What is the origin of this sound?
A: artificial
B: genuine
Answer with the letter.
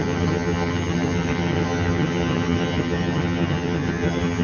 A